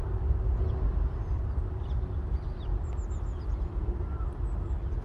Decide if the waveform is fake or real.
real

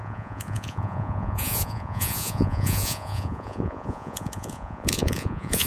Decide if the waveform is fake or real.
fake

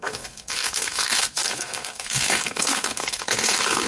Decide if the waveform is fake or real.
fake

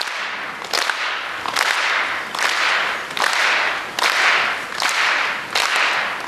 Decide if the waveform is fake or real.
real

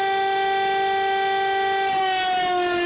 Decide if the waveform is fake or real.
real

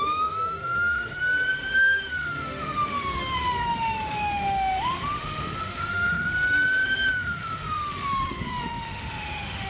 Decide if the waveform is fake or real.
fake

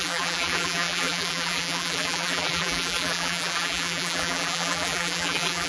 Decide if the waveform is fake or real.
fake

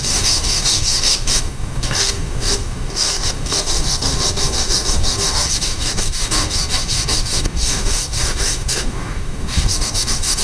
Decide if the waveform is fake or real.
fake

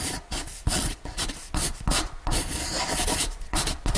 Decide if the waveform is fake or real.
fake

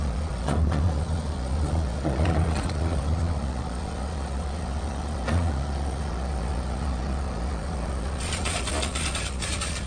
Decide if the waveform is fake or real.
fake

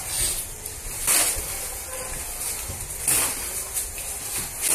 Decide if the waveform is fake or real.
real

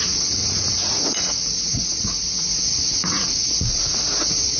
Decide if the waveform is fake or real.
fake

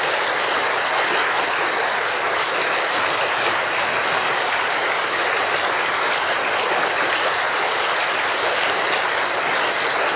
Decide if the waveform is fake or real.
real